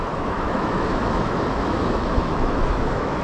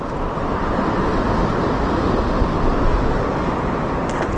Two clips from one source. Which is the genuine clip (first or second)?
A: second